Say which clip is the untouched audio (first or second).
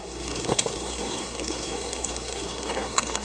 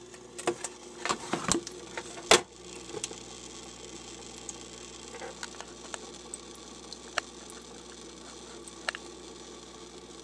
second